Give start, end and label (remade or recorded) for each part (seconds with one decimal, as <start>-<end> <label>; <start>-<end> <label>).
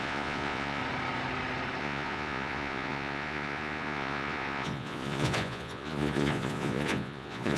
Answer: 0.0-0.8 remade; 0.8-1.8 recorded; 1.8-7.6 remade